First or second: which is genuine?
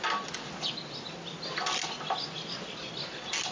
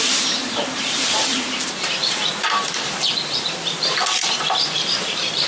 first